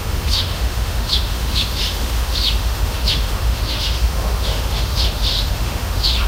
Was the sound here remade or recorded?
remade